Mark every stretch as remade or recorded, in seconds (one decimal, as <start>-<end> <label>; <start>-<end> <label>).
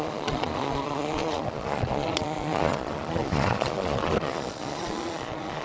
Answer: 0.0-5.6 remade